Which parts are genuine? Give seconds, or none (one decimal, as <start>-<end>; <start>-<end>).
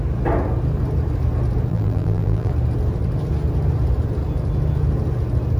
0.0-1.7; 2.5-5.6